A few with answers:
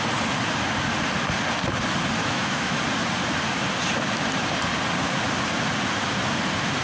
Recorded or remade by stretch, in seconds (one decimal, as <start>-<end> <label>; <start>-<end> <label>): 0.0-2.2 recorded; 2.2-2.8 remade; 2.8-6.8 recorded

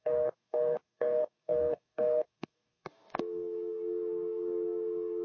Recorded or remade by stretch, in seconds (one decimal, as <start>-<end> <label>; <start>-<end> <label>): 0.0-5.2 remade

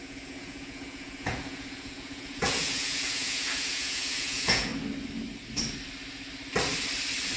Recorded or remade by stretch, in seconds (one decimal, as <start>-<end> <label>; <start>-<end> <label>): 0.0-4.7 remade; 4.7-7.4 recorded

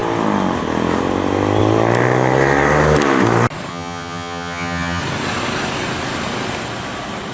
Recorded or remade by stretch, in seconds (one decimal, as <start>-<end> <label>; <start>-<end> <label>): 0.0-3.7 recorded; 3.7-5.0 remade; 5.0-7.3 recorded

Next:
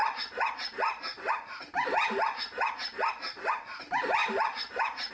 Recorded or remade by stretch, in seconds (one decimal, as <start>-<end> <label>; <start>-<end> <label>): 0.0-5.1 recorded

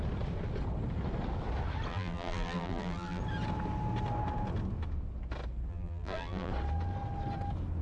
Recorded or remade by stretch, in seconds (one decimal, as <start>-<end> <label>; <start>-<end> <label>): 0.0-1.9 recorded; 1.9-3.2 remade; 3.2-5.7 recorded; 5.7-6.5 remade; 6.5-7.8 recorded